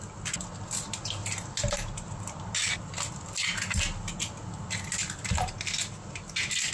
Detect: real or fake real